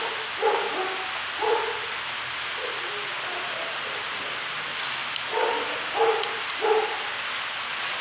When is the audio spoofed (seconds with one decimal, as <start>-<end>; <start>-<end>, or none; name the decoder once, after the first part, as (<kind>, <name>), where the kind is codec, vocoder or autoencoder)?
none